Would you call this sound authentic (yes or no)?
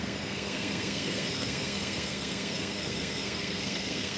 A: no